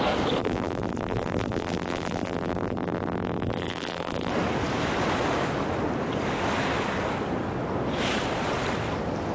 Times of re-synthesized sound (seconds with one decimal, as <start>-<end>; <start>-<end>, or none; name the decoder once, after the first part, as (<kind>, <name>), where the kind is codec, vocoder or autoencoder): 0.4-4.3 (vocoder, BigVGAN v2)